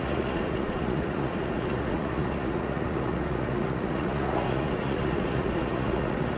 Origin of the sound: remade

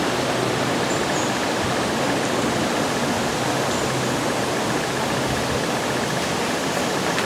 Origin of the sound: recorded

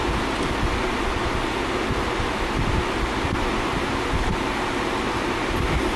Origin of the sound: recorded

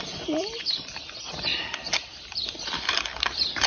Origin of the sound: remade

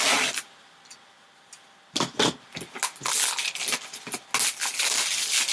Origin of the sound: recorded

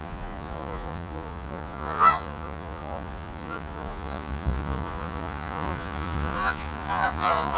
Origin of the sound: remade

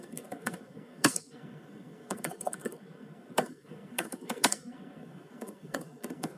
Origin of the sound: remade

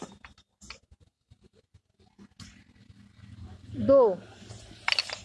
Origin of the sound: recorded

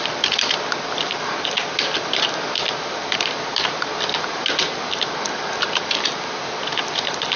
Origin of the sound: recorded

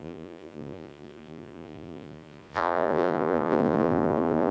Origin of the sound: remade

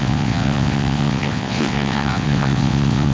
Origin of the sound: remade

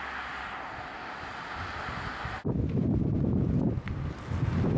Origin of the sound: recorded